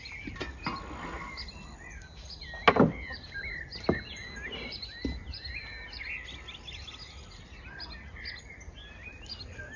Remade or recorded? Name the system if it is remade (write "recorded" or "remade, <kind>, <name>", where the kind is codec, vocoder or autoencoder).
recorded